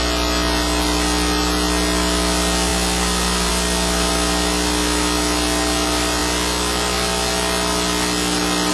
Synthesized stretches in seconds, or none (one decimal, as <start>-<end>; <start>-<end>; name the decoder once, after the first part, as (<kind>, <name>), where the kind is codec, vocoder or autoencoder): none